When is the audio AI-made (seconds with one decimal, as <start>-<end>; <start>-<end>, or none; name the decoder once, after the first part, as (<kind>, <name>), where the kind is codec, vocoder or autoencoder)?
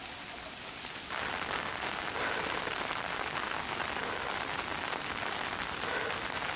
none